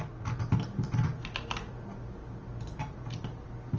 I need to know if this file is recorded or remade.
recorded